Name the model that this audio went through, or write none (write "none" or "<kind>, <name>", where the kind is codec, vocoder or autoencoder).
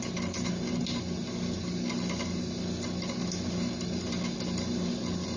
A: none